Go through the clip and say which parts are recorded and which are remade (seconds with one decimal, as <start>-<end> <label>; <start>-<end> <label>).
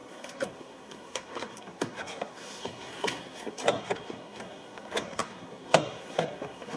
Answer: 0.0-6.8 remade